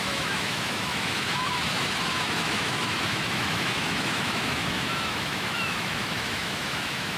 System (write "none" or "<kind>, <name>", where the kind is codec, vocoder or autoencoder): autoencoder, DAC-VAE